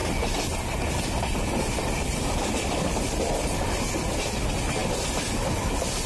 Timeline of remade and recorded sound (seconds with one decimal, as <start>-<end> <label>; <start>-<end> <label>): 0.0-6.1 recorded